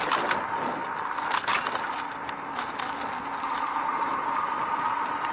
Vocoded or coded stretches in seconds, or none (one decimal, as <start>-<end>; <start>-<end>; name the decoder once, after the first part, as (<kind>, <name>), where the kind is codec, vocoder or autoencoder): none